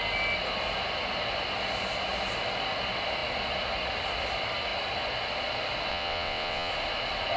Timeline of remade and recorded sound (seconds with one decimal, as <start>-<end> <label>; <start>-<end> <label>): 0.0-5.9 recorded; 5.9-6.7 remade; 6.7-7.4 recorded